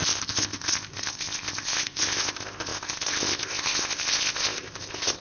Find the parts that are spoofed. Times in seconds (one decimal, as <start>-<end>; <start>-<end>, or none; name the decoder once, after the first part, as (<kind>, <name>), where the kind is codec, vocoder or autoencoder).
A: 0.0-5.2 (codec, ZipCodec)